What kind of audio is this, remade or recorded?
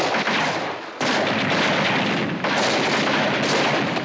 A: recorded